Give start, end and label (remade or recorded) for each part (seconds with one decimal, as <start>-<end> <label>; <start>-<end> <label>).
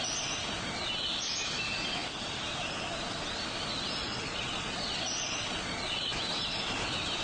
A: 0.0-4.0 recorded; 4.0-6.2 remade; 6.2-7.2 recorded